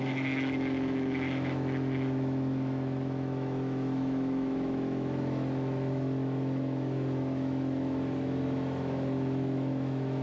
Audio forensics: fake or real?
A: fake